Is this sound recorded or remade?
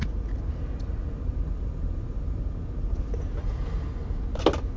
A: recorded